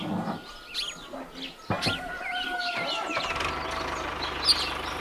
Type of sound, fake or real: real